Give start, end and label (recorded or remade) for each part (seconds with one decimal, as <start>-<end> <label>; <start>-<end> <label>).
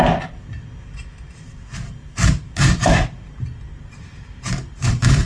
0.0-2.0 recorded; 2.0-5.3 remade